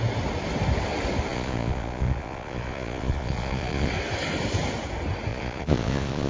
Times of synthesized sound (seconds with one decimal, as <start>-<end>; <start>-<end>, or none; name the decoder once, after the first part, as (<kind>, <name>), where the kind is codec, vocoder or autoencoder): 1.3-3.9 (vocoder, Vocos); 5.3-6.3